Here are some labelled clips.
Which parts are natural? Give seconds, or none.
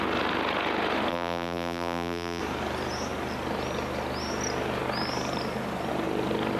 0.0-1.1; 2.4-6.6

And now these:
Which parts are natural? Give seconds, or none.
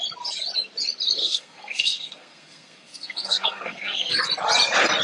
0.0-1.2; 4.2-5.0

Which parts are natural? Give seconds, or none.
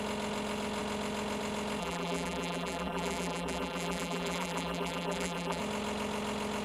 0.0-1.8; 5.6-6.6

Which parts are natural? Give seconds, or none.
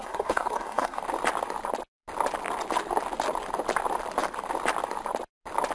1.0-5.7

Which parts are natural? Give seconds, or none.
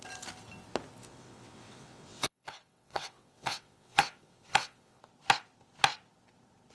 0.0-1.0; 5.0-6.7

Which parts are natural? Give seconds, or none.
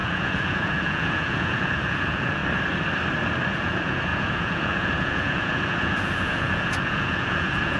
2.4-3.5